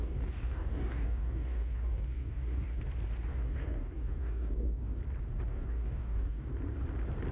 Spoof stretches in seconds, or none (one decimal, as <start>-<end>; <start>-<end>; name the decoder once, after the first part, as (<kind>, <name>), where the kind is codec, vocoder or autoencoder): 0.0-2.8 (codec, DAC); 3.3-5.0; 5.5-6.5